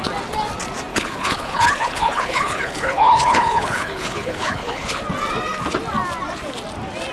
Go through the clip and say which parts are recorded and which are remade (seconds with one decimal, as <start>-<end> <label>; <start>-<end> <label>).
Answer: 0.0-0.9 recorded; 0.9-5.0 remade; 5.0-7.1 recorded